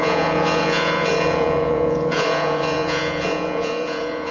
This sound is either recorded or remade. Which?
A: remade